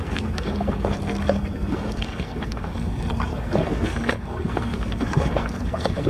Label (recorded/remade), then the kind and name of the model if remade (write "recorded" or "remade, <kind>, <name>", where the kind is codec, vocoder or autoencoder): remade, codec, SNAC